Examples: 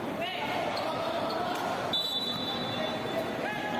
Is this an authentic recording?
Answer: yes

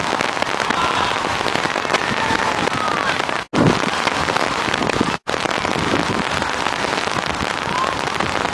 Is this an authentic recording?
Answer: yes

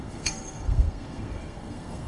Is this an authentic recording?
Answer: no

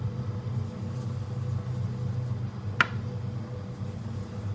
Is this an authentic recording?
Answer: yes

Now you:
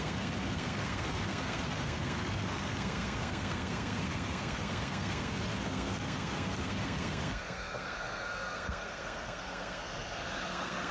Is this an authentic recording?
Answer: no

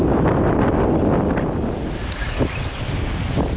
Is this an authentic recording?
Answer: yes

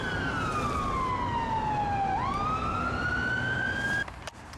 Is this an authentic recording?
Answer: yes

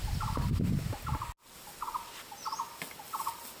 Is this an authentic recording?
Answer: yes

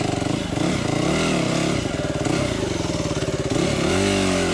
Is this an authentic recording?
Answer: yes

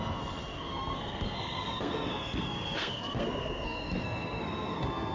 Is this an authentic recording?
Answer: no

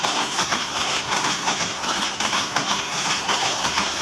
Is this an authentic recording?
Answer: no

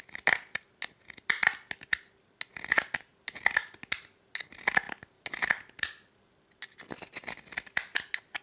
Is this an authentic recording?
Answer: yes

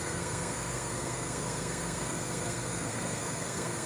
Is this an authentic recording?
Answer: no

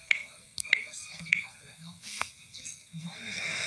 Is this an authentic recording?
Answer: no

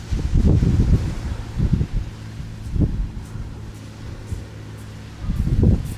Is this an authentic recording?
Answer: yes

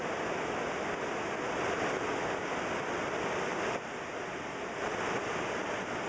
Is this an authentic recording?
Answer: yes